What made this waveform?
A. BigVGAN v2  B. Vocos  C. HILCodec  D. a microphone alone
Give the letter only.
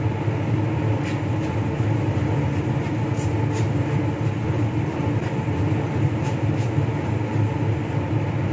D